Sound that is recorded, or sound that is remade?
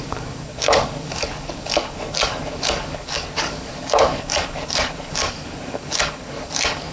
remade